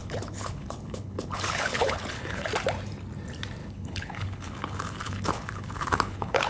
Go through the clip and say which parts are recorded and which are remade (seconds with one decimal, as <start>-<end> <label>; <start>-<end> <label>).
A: 0.0-2.5 remade; 2.5-3.6 recorded; 3.6-6.5 remade